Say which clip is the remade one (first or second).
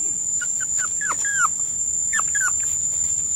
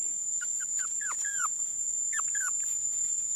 second